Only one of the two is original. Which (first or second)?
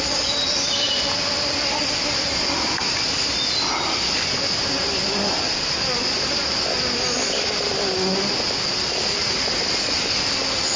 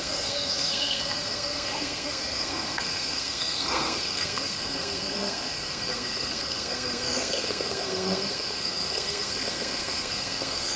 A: first